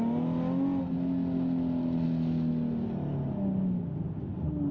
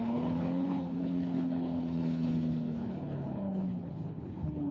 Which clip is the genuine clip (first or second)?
first